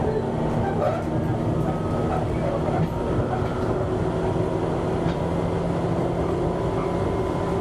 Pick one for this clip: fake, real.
real